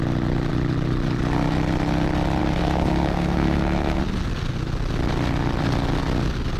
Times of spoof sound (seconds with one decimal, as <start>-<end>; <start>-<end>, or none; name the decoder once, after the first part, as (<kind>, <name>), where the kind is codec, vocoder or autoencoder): 2.4-4.0 (codec, SNAC)